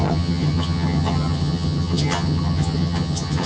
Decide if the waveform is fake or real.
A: fake